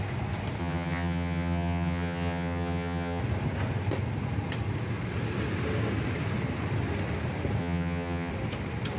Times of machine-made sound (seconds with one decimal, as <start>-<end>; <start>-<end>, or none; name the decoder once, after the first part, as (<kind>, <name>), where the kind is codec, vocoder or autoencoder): 0.6-3.2 (vocoder, HiFi-GAN); 7.6-8.3